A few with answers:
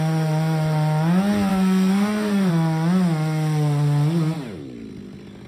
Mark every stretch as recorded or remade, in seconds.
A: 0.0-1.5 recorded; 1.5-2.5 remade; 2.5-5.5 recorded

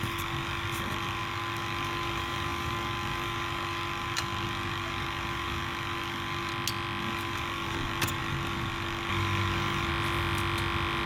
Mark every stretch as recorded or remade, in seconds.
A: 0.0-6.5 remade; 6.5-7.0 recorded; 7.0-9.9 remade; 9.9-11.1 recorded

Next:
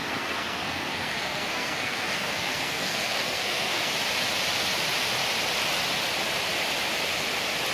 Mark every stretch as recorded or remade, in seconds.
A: 0.0-3.9 remade; 3.9-7.7 recorded